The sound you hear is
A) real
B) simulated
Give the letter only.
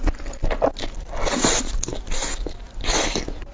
A